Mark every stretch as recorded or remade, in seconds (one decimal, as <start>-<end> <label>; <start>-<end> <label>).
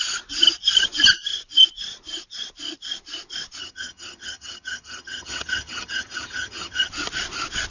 0.0-3.6 recorded; 3.6-6.9 remade; 6.9-7.7 recorded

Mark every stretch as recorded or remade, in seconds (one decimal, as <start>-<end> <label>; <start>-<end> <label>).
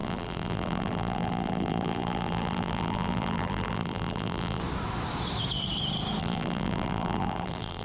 0.0-4.6 remade; 4.6-6.2 recorded; 6.2-7.8 remade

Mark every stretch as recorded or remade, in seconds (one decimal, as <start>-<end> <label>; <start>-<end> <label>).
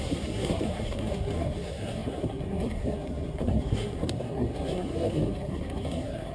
0.0-6.3 remade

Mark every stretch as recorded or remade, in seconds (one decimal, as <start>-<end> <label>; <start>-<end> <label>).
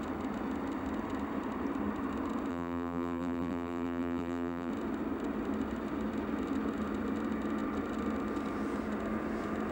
0.0-2.5 recorded; 2.5-4.7 remade; 4.7-9.7 recorded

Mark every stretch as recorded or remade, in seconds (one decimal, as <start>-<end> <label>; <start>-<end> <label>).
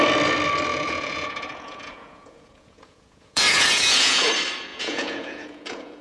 0.0-0.7 recorded; 0.7-4.3 remade; 4.3-4.7 recorded; 4.7-6.0 remade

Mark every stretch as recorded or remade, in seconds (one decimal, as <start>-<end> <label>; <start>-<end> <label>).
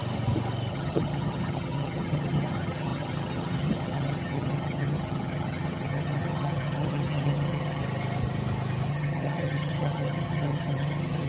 0.0-0.7 recorded; 0.7-7.8 remade; 7.8-8.9 recorded; 8.9-11.3 remade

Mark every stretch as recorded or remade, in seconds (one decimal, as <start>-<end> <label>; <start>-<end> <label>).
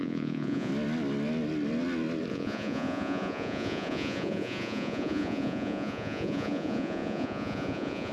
0.0-0.7 remade; 0.7-2.3 recorded; 2.3-8.1 remade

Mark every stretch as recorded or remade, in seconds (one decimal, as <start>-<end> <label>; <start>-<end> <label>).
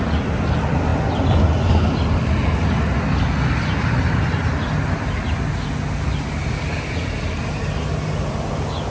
0.0-8.9 recorded